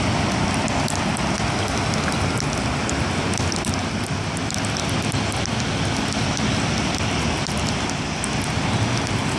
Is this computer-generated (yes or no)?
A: no